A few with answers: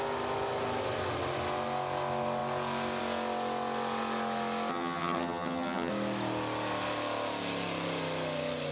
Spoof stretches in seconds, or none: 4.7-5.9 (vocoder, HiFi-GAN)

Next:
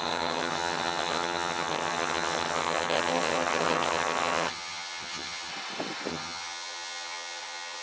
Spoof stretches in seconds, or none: 0.0-5.5 (vocoder, HiFi-GAN); 6.1-7.8

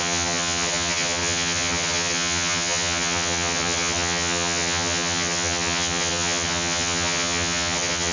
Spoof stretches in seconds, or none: 0.0-8.1 (vocoder, HiFi-GAN)

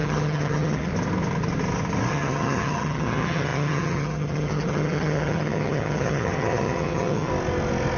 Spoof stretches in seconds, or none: 0.0-0.9 (vocoder, HiFi-GAN); 2.1-7.3

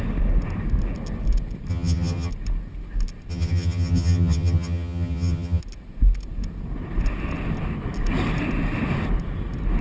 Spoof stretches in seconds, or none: 1.7-2.3 (vocoder, HiFi-GAN); 3.3-5.6

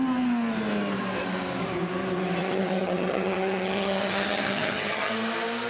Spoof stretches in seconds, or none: 2.4-5.1 (vocoder, HiFi-GAN)